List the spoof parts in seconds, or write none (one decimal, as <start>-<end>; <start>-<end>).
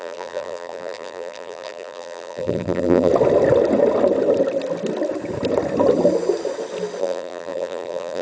0.0-3.1; 7.0-8.2